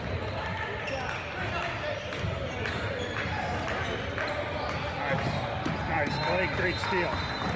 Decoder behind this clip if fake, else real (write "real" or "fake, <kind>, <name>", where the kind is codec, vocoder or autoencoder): real